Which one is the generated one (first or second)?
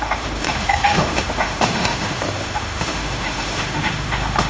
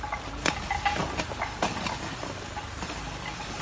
first